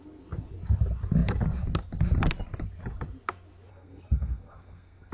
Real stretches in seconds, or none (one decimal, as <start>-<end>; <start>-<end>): 0.0-3.7